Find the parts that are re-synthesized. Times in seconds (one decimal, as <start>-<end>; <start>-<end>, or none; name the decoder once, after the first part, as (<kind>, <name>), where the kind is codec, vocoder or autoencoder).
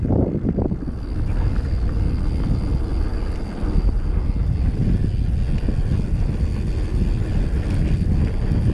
none